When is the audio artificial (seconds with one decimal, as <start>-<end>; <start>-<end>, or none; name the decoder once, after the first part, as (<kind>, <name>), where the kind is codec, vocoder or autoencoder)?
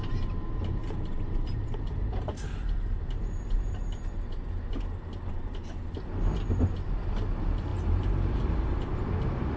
0.8-4.5 (vocoder, BigVGAN v2); 7.7-8.4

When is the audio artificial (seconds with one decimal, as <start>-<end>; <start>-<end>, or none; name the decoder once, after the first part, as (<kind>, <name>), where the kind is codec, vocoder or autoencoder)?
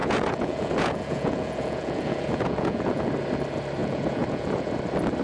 0.0-3.1 (vocoder, Vocos); 3.8-4.7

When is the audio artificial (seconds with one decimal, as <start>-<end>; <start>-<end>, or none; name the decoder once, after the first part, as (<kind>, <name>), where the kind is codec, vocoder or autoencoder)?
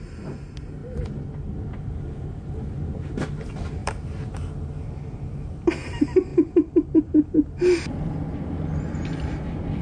3.8-4.6 (vocoder, BigVGAN v2)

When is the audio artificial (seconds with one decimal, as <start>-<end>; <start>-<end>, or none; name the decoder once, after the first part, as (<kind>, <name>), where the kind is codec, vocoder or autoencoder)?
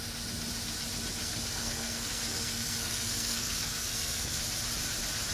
1.2-4.4 (codec, SNAC)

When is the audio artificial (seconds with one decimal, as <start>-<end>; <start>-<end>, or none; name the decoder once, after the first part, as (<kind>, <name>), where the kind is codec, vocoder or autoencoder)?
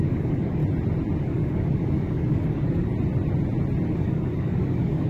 0.0-0.6 (codec, DAC); 1.2-2.9; 3.9-5.1